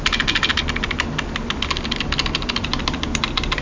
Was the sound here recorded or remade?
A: recorded